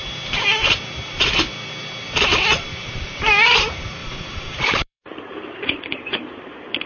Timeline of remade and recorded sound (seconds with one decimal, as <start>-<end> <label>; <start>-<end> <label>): 0.0-2.7 recorded; 2.7-3.2 remade; 3.2-4.0 recorded; 4.0-6.5 remade; 6.5-6.9 recorded